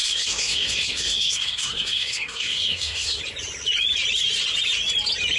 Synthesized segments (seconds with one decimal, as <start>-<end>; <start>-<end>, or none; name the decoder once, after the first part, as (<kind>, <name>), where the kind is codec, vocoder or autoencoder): 0.0-3.2 (codec, SNAC)

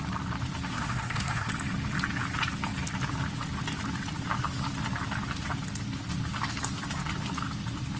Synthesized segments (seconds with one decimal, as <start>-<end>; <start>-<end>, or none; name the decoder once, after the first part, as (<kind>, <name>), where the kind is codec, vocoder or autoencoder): 0.7-1.5 (codec, SNAC)

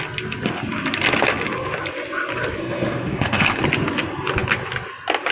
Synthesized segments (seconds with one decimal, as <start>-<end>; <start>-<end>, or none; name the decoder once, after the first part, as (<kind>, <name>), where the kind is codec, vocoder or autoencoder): 2.6-3.6 (codec, SNAC)

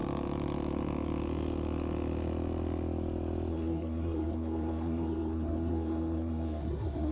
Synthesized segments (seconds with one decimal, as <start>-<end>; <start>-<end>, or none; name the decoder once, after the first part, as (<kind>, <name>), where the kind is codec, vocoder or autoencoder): 3.5-7.1 (codec, SNAC)

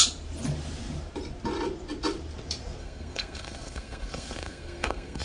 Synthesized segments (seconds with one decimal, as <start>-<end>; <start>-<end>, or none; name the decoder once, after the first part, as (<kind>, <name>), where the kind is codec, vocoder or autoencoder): 2.8-5.2 (codec, SNAC)

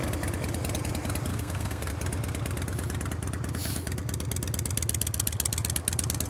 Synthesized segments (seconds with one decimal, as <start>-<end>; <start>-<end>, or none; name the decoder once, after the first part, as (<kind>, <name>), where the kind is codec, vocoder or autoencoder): 1.3-1.9 (codec, SNAC)

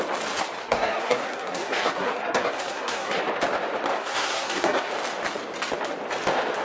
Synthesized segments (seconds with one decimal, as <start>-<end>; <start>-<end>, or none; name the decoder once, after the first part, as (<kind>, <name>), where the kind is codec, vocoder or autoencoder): 0.6-3.2 (codec, SNAC); 4.0-4.9